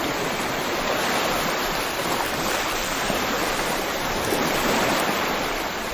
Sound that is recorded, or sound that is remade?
remade